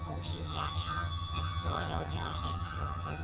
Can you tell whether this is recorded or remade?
remade